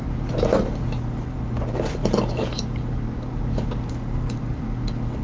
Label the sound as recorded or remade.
recorded